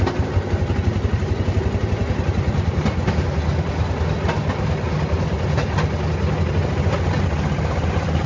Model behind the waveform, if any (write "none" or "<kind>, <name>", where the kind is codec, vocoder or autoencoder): none